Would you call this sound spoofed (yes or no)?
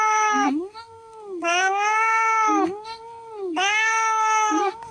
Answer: yes